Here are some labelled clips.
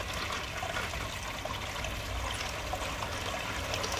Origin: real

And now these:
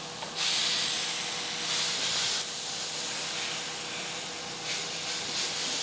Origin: real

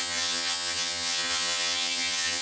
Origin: fake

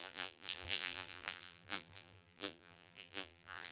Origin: fake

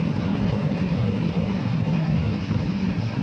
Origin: fake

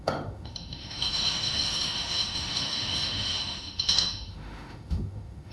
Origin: fake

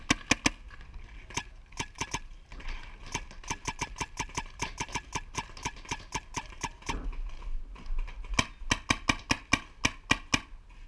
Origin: real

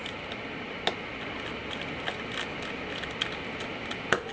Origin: real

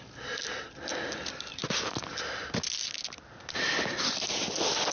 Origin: real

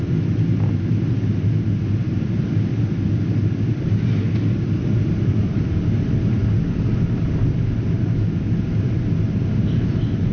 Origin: real